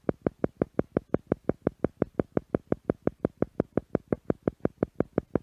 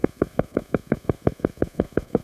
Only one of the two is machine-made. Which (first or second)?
second